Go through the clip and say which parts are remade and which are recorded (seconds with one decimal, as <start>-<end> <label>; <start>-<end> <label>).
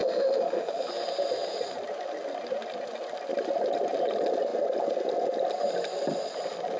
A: 0.0-0.9 remade; 0.9-6.8 recorded